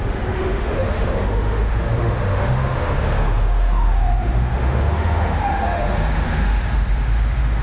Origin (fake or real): fake